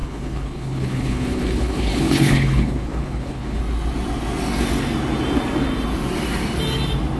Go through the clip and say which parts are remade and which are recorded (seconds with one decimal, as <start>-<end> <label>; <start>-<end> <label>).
0.0-3.6 remade; 3.6-7.2 recorded